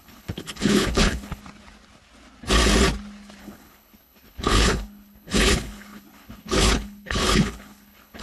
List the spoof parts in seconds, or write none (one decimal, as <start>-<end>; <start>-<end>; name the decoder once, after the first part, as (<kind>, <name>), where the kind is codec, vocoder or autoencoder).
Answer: 0.0-1.4 (codec, HILCodec); 3.4-8.2